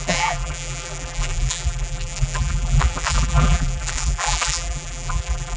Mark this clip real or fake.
fake